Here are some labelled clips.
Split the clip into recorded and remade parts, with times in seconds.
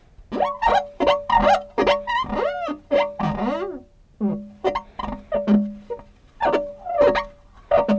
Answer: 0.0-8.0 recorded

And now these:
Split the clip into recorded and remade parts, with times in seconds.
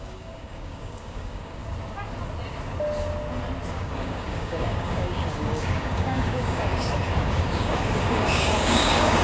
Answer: 0.0-1.6 remade; 1.6-3.7 recorded; 3.7-9.2 remade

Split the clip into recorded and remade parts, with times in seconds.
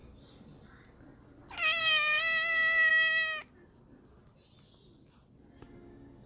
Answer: 0.0-1.8 recorded; 1.8-2.9 remade; 2.9-5.6 recorded; 5.6-6.3 remade